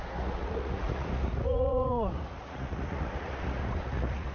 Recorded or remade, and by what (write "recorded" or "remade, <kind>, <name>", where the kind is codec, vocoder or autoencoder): remade, vocoder, Vocos